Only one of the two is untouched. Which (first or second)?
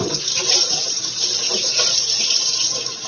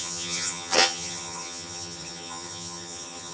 first